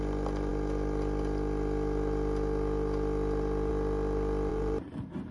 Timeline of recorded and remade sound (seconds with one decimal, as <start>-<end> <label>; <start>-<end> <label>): 0.0-4.5 recorded; 4.5-5.3 remade